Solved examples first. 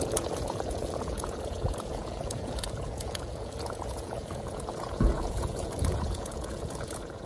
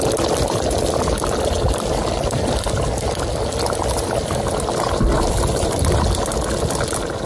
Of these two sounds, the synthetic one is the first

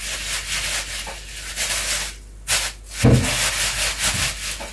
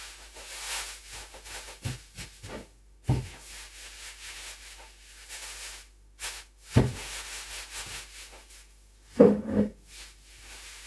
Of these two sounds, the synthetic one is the second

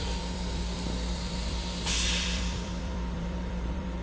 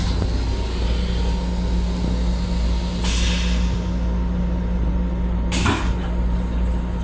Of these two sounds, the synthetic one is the first